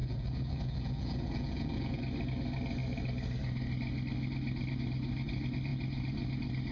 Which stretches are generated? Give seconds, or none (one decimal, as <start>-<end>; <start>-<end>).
0.0-2.0